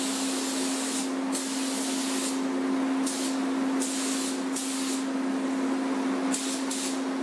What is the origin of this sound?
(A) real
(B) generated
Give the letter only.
A